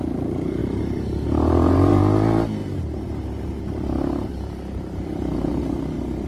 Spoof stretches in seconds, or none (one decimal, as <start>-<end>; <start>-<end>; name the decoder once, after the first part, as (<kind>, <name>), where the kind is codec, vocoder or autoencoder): 0.6-2.0 (vocoder, BigVGAN v2); 2.6-5.6